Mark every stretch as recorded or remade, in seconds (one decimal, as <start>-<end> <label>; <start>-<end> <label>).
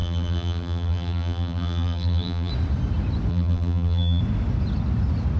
0.0-2.5 remade; 2.5-3.3 recorded; 3.3-4.2 remade; 4.2-5.4 recorded